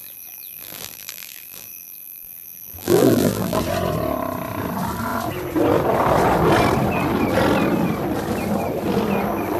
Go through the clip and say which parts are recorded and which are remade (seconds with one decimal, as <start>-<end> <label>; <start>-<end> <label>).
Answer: 0.0-3.6 remade; 3.6-9.6 recorded